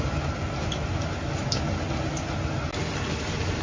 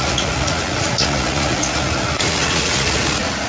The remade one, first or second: second